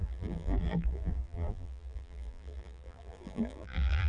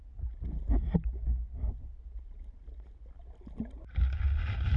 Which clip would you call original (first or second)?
second